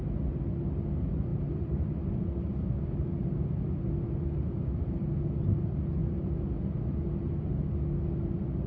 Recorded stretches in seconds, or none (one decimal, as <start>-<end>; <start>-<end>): 0.0-1.3; 2.1-8.7